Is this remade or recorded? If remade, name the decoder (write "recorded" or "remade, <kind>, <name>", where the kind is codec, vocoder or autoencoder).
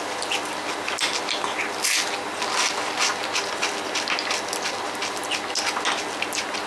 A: recorded